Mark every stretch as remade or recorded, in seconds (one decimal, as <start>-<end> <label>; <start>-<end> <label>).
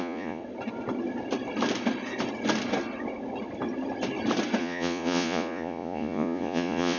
0.0-0.4 remade; 0.4-4.6 recorded; 4.6-7.0 remade